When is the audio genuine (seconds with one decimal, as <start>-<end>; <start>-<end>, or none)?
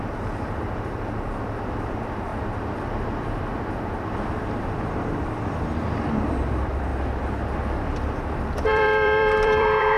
2.3-4.6; 6.9-8.2